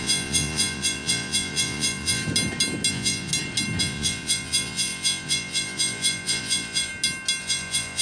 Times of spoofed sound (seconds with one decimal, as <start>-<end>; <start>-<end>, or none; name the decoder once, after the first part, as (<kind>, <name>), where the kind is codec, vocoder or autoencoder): 0.0-2.2 (vocoder, Vocos); 2.9-3.3; 3.8-6.9; 7.4-8.0